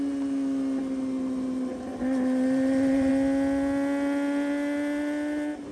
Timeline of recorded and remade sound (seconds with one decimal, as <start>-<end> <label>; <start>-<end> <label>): 0.0-1.9 recorded; 1.9-3.1 remade; 3.1-5.7 recorded